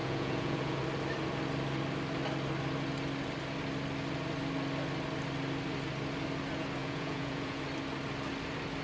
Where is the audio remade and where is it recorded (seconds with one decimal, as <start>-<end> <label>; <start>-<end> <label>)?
0.0-0.8 remade; 0.8-6.8 recorded; 6.8-7.6 remade; 7.6-8.8 recorded